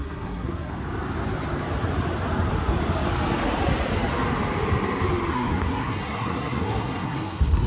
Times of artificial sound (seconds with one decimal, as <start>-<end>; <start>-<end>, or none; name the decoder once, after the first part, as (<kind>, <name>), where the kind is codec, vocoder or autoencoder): 0.0-0.7 (codec, SNAC); 5.3-7.7

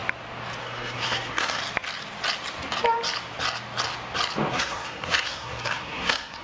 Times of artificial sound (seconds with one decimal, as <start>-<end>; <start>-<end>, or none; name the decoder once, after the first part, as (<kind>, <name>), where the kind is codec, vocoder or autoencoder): 0.6-1.6 (codec, SNAC); 4.5-6.4

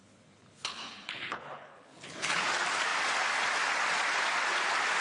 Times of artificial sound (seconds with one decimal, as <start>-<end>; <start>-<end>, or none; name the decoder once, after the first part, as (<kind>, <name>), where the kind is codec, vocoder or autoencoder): 0.0-2.5 (codec, HILCodec)

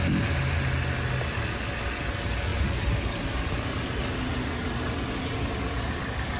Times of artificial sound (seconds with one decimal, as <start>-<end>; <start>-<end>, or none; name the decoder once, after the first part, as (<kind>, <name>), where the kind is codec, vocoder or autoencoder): none

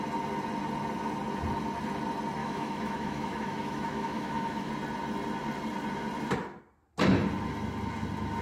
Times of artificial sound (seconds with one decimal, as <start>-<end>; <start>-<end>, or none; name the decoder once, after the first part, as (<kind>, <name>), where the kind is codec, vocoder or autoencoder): 2.4-4.7 (autoencoder, DAC-VAE)

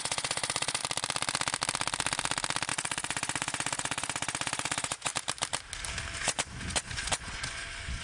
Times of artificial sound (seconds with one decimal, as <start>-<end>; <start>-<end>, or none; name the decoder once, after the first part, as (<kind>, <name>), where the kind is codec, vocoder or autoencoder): 0.0-0.8 (vocoder, Vocos); 2.7-5.1; 6.2-8.0